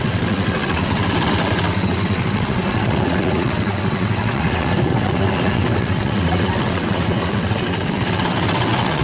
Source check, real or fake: fake